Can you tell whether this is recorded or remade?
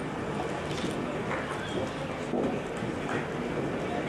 recorded